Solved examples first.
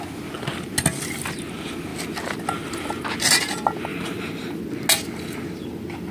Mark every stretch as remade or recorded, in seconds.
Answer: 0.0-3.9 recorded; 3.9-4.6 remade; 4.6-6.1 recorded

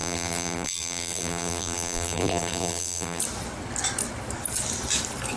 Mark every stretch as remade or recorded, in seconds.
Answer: 0.0-3.2 remade; 3.2-5.4 recorded

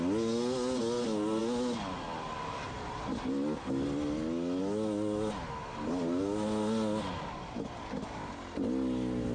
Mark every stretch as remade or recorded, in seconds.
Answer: 0.0-9.3 recorded

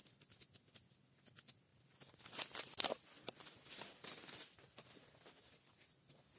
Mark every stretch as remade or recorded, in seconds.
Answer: 0.0-1.7 recorded; 1.7-5.5 remade; 5.5-6.4 recorded